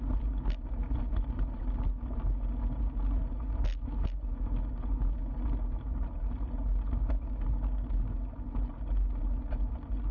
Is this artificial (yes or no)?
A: no